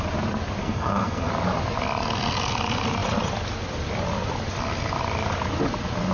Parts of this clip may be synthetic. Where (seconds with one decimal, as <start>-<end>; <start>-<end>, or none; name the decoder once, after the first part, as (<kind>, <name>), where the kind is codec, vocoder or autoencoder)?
0.6-1.3 (codec, SNAC)